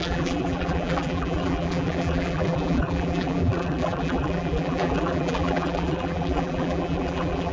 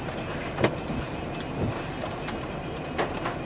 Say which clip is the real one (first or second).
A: second